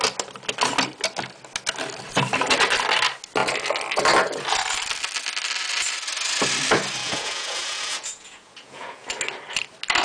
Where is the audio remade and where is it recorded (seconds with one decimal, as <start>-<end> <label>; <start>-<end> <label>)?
0.0-7.0 recorded; 7.0-9.1 remade; 9.1-10.0 recorded